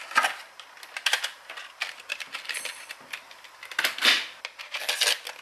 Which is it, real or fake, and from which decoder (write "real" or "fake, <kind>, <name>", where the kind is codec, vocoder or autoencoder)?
real